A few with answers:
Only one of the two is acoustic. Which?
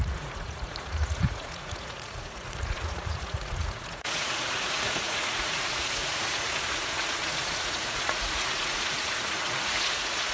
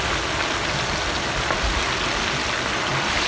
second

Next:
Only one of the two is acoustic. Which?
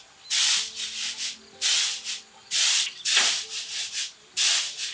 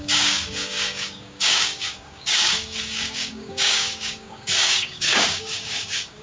first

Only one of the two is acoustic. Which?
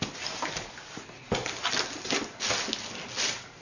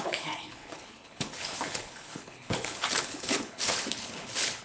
first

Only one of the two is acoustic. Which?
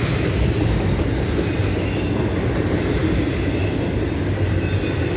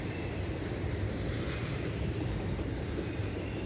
first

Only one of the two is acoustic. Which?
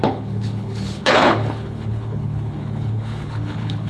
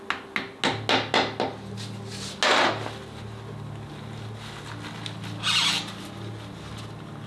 second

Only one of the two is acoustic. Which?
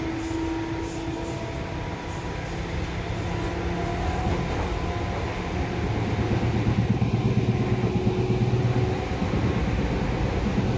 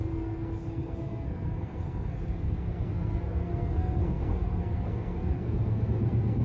first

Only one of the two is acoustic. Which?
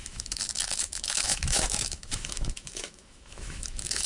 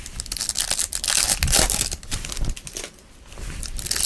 second